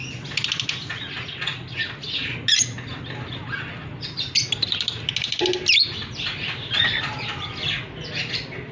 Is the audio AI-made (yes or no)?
no